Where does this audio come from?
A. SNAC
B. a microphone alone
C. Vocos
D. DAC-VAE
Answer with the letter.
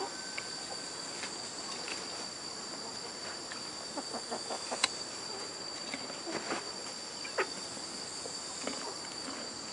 B